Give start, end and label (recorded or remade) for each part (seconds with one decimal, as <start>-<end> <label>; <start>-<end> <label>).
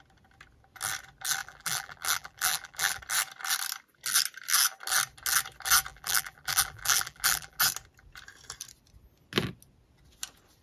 0.0-1.4 recorded; 1.4-3.0 remade; 3.0-5.9 recorded; 5.9-7.6 remade; 7.6-10.6 recorded